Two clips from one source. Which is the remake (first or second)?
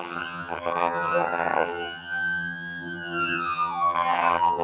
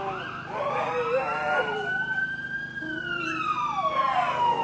first